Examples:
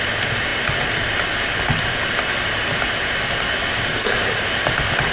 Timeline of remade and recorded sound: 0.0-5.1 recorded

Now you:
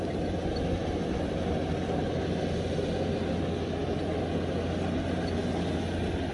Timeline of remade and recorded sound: 0.0-6.3 recorded

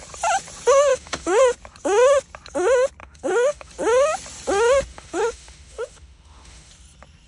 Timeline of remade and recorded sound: 0.0-0.9 recorded; 0.9-1.4 remade; 1.4-3.0 recorded; 3.0-3.7 remade; 3.7-4.9 recorded; 4.9-6.7 remade; 6.7-7.3 recorded